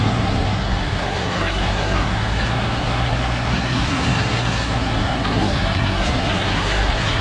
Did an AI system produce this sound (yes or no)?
yes